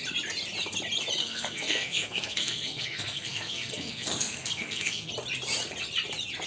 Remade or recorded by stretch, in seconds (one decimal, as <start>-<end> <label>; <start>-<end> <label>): 0.0-1.2 recorded; 1.2-5.1 remade; 5.1-6.5 recorded